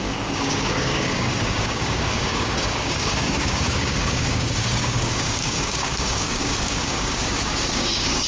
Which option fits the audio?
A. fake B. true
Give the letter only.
A